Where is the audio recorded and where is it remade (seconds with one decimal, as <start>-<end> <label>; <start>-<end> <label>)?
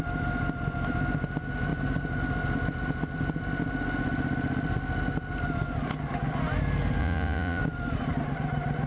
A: 0.0-7.0 recorded; 7.0-7.6 remade; 7.6-8.9 recorded